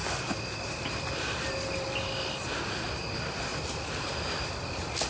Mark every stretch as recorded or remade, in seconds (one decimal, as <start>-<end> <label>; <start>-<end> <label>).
0.0-5.1 recorded